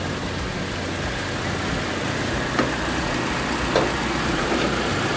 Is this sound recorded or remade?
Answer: recorded